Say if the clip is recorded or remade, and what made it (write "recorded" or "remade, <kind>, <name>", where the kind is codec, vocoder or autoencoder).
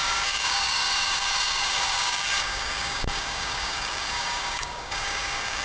remade, codec, DAC